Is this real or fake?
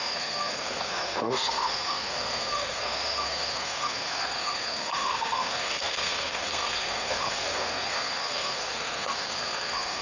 fake